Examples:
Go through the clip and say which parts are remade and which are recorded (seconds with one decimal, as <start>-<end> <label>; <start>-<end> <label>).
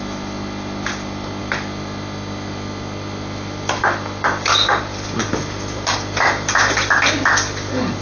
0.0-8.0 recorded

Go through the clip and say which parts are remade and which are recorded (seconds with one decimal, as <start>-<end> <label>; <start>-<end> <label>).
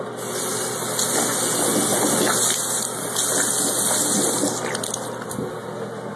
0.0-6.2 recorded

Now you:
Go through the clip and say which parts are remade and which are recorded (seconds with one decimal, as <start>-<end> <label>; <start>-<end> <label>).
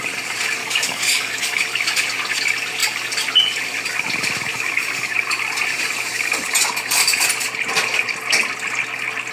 0.0-0.6 recorded; 0.6-1.6 remade; 1.6-4.5 recorded; 4.5-5.1 remade; 5.1-9.3 recorded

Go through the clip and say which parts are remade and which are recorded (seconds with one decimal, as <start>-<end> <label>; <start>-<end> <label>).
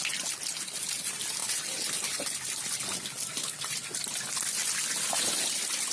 0.0-5.9 recorded